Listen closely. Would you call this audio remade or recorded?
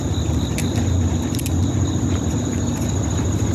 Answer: recorded